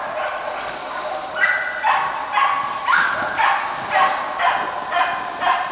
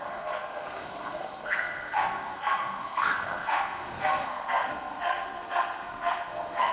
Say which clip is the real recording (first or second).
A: first